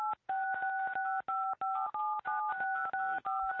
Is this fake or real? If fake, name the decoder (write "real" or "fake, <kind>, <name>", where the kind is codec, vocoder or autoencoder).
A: real